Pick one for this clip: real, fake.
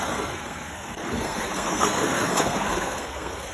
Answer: fake